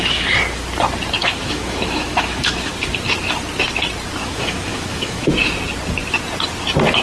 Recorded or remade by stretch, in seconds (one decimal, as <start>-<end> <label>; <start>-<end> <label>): 0.0-1.2 recorded; 1.2-2.7 remade; 2.7-4.2 recorded; 4.2-5.3 remade; 5.3-7.0 recorded